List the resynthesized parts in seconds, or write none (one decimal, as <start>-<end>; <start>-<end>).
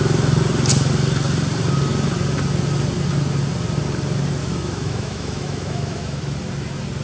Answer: 4.4-6.2